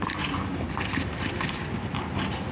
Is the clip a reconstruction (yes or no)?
no